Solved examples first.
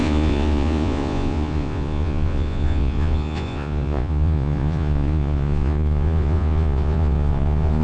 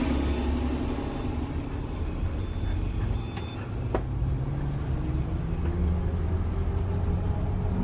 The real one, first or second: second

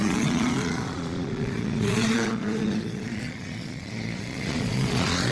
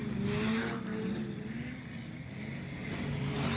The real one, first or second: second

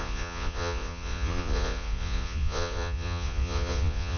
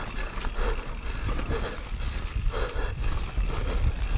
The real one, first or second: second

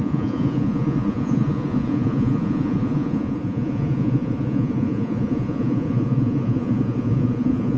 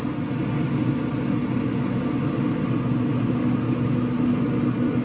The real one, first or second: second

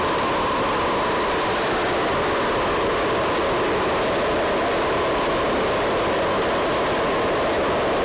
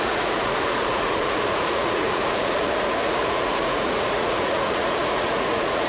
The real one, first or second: first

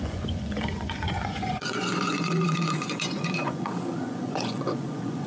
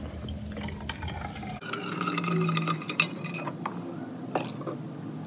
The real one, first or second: second